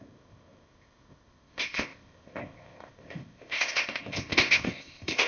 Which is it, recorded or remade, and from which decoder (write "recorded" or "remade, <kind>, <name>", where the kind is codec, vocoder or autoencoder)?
remade, codec, ZipCodec